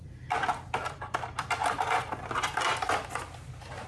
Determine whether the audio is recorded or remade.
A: recorded